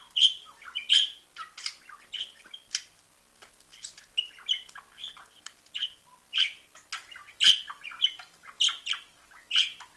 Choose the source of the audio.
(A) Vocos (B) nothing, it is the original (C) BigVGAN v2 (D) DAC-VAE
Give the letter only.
B